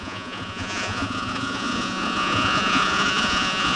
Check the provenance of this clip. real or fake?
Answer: fake